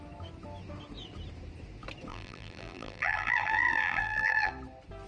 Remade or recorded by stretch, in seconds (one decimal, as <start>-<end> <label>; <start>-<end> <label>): 0.0-2.1 recorded; 2.1-4.5 remade; 4.5-5.1 recorded